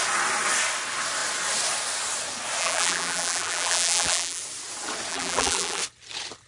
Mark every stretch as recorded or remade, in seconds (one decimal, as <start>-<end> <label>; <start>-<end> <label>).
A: 0.0-2.6 recorded; 2.6-4.4 remade; 4.4-5.1 recorded; 5.1-5.8 remade; 5.8-6.5 recorded